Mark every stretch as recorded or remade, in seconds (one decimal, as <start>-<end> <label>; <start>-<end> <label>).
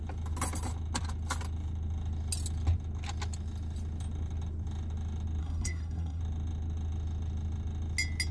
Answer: 0.0-5.4 recorded; 5.4-6.2 remade; 6.2-8.3 recorded